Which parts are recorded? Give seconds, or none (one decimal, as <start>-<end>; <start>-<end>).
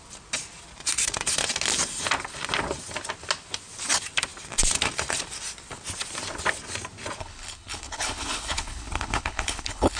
0.0-7.2